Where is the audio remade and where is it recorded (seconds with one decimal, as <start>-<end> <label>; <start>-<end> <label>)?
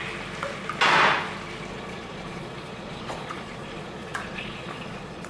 0.0-1.7 recorded; 1.7-5.3 remade